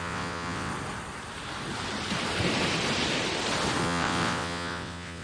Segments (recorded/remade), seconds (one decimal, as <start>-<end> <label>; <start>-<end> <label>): 0.0-0.7 remade; 0.7-3.8 recorded; 3.8-5.2 remade